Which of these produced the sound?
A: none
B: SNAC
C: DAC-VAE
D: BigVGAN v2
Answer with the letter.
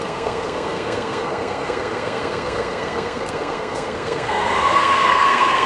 B